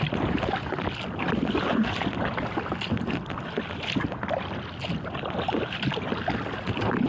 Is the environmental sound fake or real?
real